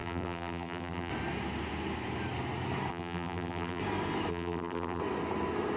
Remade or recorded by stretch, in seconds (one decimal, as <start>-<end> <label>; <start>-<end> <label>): 0.0-1.1 remade; 1.1-2.9 recorded; 2.9-3.8 remade; 3.8-4.3 recorded; 4.3-5.0 remade; 5.0-5.8 recorded